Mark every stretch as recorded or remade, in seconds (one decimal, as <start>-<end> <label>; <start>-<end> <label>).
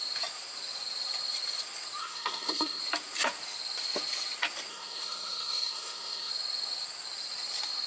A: 0.0-2.0 recorded; 2.0-2.8 remade; 2.8-4.7 recorded; 4.7-6.3 remade; 6.3-7.9 recorded